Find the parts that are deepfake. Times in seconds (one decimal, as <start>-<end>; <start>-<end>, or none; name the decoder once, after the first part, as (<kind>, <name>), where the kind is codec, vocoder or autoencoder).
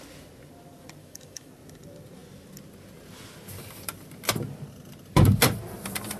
1.0-1.5 (autoencoder, DAC-VAE)